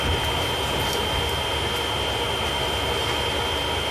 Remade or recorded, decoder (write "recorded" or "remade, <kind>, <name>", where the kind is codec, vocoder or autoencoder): recorded